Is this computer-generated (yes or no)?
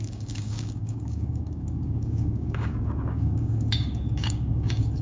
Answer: yes